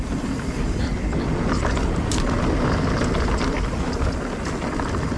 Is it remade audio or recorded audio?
recorded